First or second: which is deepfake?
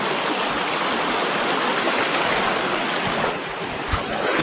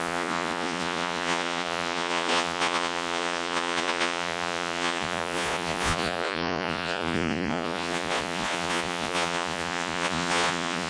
second